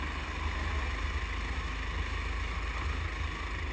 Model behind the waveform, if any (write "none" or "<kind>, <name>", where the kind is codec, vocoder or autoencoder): none